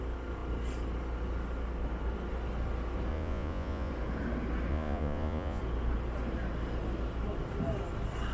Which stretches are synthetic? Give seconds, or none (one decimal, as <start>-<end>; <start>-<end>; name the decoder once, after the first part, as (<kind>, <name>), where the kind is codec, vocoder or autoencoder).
3.1-3.9 (vocoder, Vocos); 4.7-5.6